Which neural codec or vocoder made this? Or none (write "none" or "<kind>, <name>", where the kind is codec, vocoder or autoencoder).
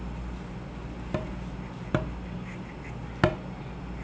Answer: none